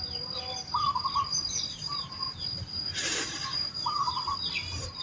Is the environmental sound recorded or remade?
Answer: recorded